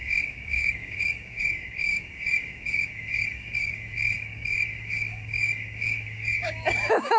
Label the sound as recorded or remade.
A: remade